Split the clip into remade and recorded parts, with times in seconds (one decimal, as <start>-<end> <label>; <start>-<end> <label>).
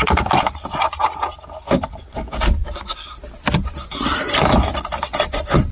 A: 0.0-5.7 recorded